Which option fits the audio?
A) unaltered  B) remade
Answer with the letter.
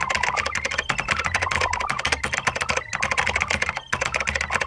A